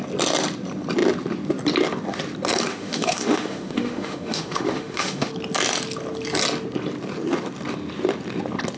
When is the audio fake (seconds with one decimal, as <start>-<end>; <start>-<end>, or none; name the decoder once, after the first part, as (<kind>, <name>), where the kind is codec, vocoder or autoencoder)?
2.7-5.3 (autoencoder, DAC-VAE)